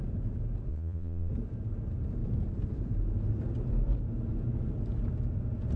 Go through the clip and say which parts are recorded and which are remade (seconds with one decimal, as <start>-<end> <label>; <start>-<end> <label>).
0.0-0.7 recorded; 0.7-1.3 remade; 1.3-5.8 recorded